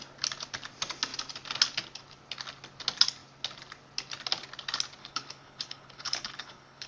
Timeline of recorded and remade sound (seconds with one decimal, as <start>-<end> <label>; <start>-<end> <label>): 0.0-5.0 recorded; 5.0-6.9 remade